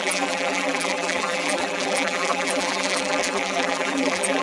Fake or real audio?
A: fake